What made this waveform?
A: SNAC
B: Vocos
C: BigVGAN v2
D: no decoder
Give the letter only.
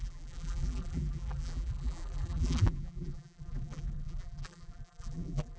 C